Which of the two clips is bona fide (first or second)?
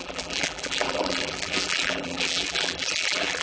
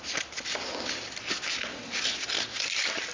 second